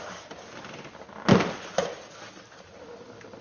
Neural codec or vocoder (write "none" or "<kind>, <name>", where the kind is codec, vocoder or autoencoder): vocoder, BigVGAN v2